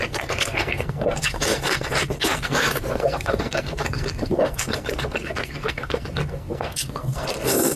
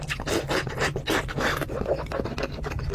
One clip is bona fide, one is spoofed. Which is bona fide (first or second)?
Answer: second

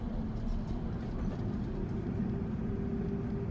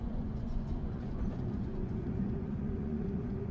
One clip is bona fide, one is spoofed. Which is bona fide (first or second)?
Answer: first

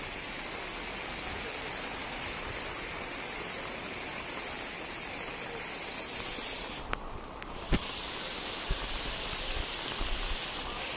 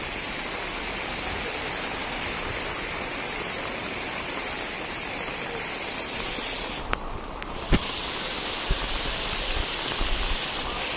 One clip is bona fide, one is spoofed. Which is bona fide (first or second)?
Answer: first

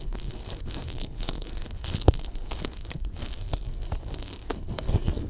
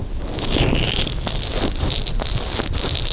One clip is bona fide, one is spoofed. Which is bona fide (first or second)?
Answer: second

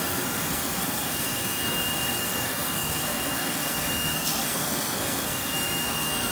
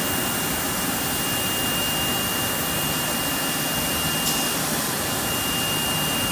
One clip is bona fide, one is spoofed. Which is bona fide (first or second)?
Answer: second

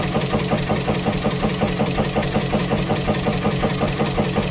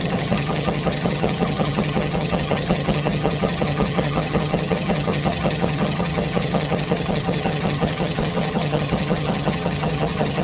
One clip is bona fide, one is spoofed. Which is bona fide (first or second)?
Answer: first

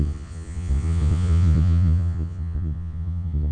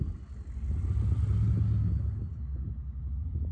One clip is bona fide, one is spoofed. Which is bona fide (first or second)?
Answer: second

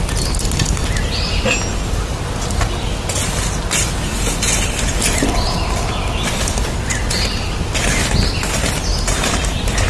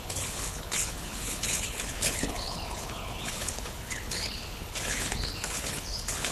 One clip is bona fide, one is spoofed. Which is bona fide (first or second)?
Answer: first